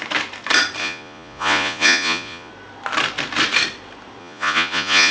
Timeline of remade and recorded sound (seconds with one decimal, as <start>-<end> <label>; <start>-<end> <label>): 0.0-0.8 recorded; 0.8-2.5 remade; 2.5-4.2 recorded; 4.2-5.1 remade